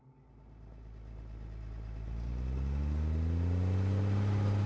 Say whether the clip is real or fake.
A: real